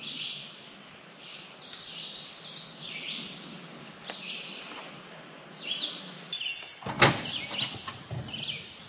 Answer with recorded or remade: recorded